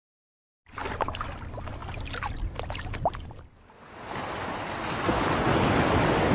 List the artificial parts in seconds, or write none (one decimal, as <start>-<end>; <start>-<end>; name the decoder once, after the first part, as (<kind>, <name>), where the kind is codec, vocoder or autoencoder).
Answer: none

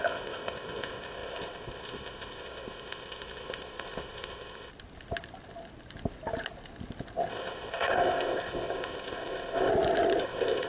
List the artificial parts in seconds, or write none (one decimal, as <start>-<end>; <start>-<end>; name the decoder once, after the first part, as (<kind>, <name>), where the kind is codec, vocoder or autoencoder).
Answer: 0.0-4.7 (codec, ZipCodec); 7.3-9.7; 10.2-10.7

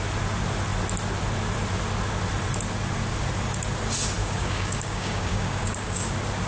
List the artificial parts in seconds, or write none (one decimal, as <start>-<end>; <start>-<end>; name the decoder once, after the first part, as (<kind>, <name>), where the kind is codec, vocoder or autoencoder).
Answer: 4.2-6.1 (codec, DAC)